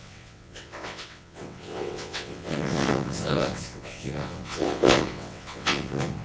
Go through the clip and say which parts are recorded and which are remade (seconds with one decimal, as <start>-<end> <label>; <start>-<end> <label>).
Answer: 0.0-6.2 remade